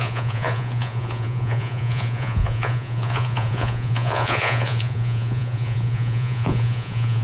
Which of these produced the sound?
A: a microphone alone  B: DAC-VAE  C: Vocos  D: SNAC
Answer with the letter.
C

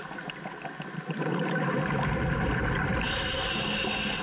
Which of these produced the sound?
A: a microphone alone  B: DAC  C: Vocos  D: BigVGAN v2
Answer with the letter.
A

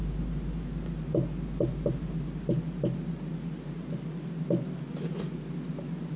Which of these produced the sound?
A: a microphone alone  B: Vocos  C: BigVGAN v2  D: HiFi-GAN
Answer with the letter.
A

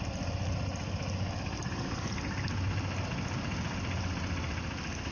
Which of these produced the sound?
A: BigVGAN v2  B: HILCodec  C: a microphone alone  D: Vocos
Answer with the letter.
C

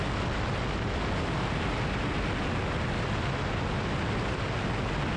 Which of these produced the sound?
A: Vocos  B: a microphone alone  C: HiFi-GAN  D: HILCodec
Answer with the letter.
B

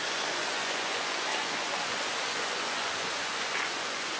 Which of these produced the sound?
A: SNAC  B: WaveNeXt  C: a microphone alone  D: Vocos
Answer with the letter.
D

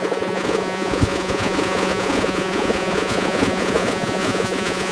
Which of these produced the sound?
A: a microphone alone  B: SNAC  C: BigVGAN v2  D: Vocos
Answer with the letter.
D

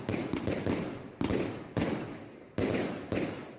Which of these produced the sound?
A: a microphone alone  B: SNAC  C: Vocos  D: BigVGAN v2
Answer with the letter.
A